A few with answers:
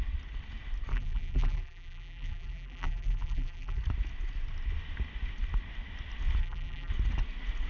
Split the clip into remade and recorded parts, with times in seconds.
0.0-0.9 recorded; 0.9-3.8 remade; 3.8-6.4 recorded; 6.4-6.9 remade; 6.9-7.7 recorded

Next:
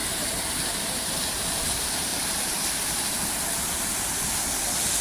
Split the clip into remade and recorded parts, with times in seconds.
0.0-3.9 remade; 3.9-5.0 recorded

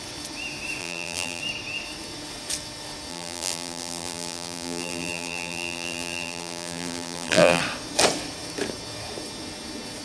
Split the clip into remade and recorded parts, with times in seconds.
0.0-0.8 recorded; 0.8-1.4 remade; 1.4-3.1 recorded; 3.1-7.6 remade; 7.6-10.0 recorded